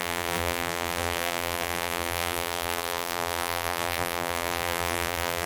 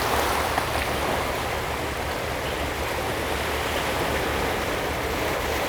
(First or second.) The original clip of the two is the second